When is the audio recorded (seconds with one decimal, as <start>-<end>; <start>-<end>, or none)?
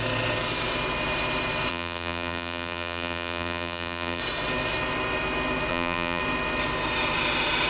0.0-1.7; 4.2-5.7; 6.2-7.7